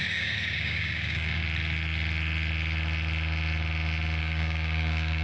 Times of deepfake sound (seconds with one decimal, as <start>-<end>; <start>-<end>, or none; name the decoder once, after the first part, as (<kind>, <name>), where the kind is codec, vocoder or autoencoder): 0.0-1.4 (codec, DAC); 4.2-5.2